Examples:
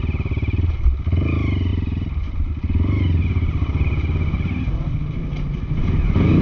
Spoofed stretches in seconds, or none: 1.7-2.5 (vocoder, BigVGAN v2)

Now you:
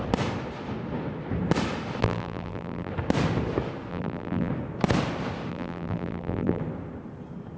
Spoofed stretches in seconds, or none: 2.0-2.9 (vocoder, BigVGAN v2); 3.9-4.5; 5.5-6.6

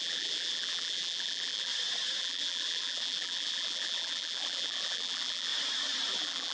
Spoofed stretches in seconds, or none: 0.0-1.7 (vocoder, BigVGAN v2); 2.2-5.5; 6.1-6.5

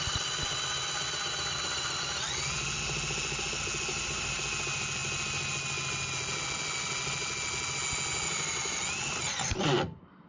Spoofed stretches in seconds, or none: 3.9-4.4 (vocoder, BigVGAN v2)